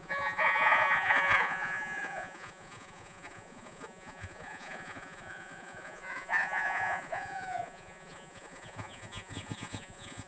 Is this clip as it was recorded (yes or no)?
no